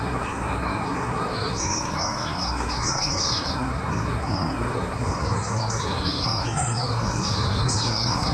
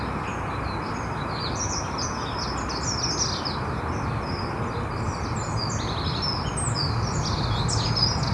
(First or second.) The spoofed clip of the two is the first